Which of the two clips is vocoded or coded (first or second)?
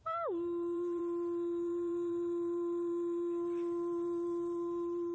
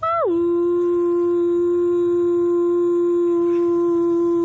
first